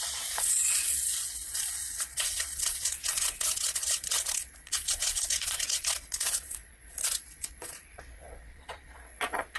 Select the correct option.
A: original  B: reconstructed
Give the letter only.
B